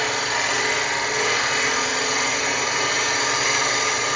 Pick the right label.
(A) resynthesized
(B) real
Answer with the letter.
B